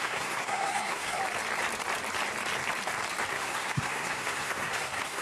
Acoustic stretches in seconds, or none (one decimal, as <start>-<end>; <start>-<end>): 1.2-3.3